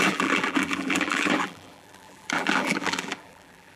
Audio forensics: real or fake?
fake